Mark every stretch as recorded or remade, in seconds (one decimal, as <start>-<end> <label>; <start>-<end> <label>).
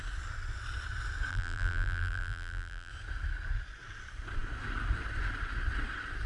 0.0-1.3 recorded; 1.3-2.9 remade; 2.9-6.3 recorded